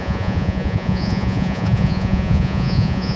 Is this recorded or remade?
remade